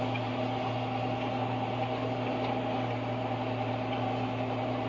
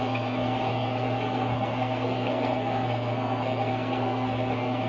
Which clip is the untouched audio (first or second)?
first